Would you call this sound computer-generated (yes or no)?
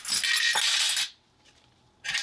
no